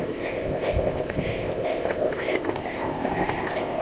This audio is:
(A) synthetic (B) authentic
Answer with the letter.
A